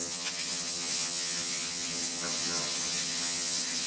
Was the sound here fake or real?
fake